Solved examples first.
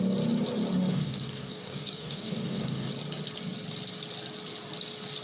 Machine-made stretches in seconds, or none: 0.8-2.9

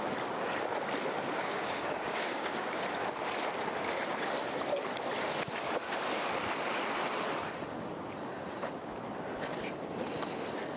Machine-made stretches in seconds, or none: 1.1-2.8

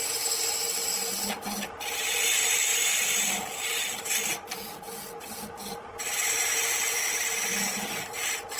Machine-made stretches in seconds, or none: none

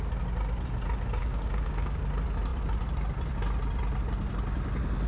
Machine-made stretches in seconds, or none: 1.2-2.0

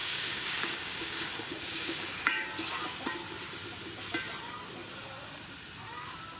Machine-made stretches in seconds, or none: 0.0-2.5

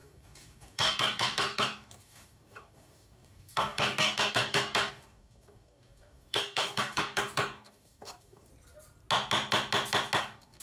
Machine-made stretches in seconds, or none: 0.0-8.5; 10.2-10.6

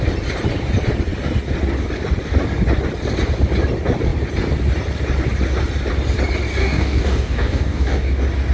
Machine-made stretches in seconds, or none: 6.6-8.1

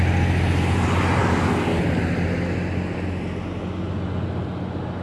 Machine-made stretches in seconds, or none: 1.2-1.8